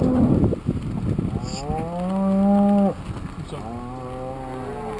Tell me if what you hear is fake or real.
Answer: real